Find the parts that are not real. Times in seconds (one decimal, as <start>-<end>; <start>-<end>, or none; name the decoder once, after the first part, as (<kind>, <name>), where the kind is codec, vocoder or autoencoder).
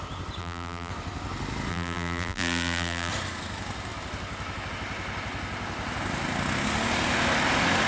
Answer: 0.4-0.9 (vocoder, BigVGAN v2); 1.7-3.1